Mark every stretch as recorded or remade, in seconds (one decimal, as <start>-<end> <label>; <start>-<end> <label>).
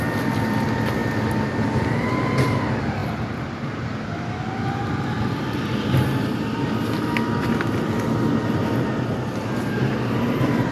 0.0-10.7 recorded